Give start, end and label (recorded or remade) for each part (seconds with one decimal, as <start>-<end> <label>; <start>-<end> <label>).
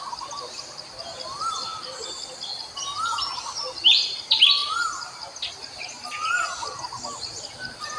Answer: 0.0-8.0 recorded